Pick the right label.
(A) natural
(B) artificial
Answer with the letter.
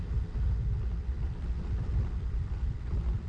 A